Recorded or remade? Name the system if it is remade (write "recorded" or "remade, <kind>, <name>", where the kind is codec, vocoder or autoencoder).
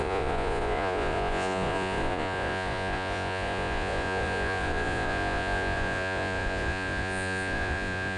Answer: remade, vocoder, Vocos